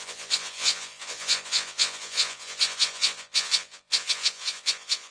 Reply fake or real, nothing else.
fake